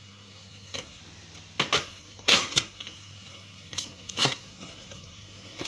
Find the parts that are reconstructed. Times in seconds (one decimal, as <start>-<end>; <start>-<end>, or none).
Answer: 0.0-1.0; 1.8-5.7